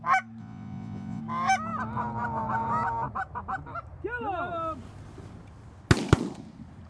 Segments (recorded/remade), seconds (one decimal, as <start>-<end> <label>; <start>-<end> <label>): 0.0-0.4 recorded; 0.4-1.2 remade; 1.2-6.9 recorded